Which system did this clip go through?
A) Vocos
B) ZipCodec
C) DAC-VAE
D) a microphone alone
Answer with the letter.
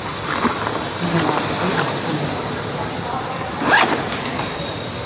D